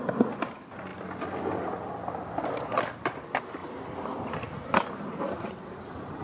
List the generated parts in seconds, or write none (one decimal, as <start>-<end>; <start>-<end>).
none